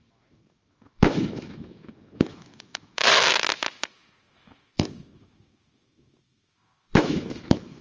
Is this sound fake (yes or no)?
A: yes